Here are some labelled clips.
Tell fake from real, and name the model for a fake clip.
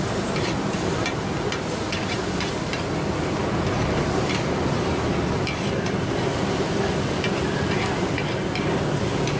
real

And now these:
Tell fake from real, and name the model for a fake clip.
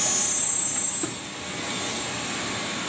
real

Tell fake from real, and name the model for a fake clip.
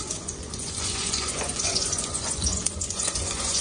fake, vocoder, Vocos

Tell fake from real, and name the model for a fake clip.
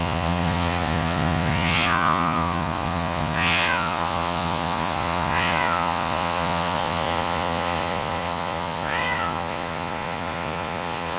fake, vocoder, Vocos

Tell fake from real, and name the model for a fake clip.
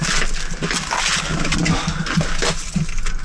real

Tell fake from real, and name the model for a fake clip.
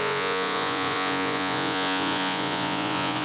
fake, vocoder, Vocos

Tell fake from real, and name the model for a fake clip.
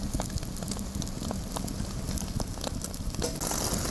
real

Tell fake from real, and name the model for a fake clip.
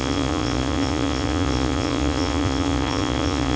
fake, vocoder, Vocos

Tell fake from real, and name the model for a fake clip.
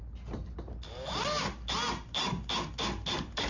real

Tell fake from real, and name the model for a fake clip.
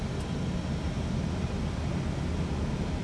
real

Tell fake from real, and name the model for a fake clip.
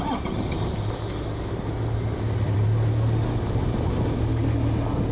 real